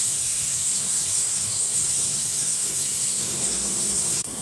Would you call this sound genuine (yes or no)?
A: no